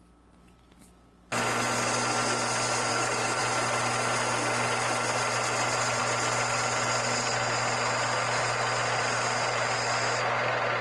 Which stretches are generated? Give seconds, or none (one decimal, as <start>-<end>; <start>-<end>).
2.9-3.4